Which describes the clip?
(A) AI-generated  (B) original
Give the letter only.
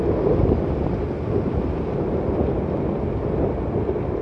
B